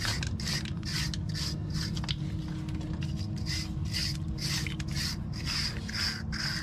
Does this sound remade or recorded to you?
recorded